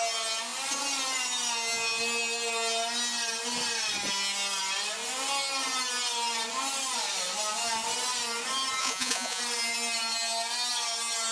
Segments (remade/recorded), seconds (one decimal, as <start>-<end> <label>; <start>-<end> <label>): 0.0-8.8 recorded; 8.8-9.4 remade; 9.4-11.3 recorded